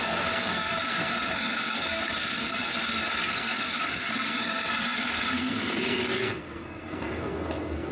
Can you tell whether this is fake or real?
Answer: fake